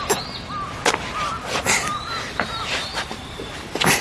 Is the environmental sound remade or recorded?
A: recorded